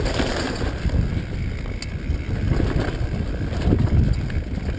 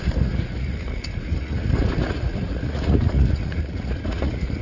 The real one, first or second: first